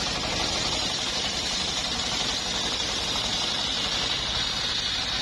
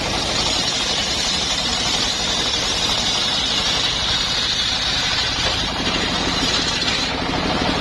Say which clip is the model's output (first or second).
second